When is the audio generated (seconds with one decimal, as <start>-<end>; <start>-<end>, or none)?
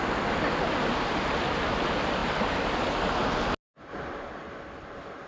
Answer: none